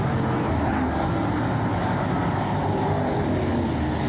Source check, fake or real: real